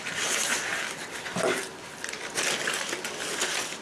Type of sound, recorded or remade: recorded